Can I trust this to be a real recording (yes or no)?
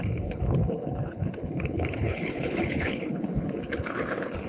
no